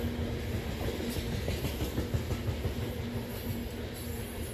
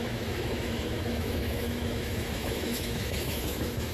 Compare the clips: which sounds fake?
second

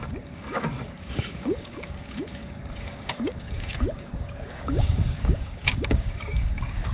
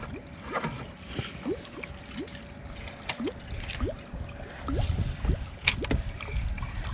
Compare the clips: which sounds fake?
first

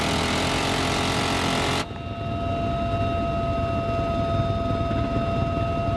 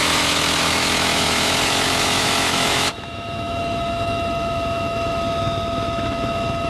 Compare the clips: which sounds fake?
second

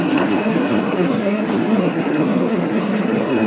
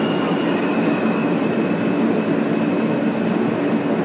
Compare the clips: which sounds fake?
first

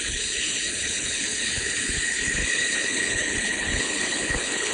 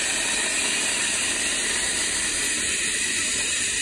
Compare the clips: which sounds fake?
first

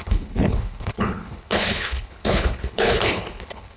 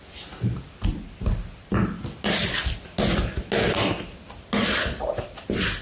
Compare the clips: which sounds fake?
first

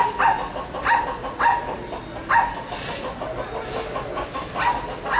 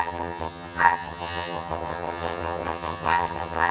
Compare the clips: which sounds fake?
second